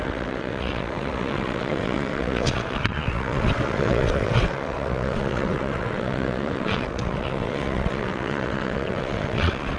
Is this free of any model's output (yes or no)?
no